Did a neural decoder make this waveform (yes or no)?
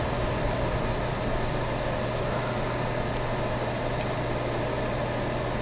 no